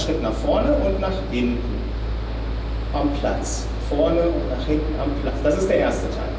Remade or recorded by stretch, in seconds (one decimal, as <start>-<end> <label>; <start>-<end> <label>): 0.0-6.4 recorded